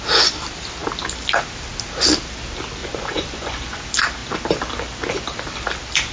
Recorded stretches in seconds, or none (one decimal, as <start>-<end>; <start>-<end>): 0.0-2.8; 3.8-6.1